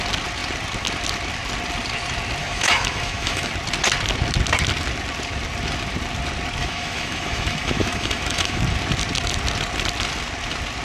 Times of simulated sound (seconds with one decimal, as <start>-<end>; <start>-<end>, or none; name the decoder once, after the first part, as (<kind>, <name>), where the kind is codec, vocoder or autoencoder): 2.4-3.5 (autoencoder, DAC-VAE); 6.6-8.6